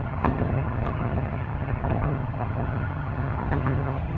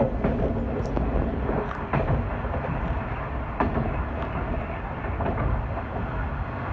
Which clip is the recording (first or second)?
second